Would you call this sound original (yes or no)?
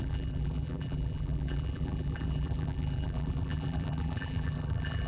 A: no